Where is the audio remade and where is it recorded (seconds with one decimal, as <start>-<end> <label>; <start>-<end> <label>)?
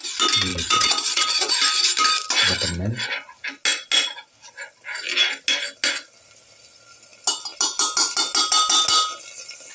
0.0-0.5 recorded; 0.5-1.5 remade; 1.5-9.7 recorded